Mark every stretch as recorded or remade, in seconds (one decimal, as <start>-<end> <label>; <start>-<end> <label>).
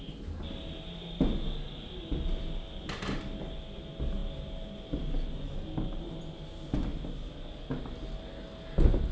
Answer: 0.0-9.1 recorded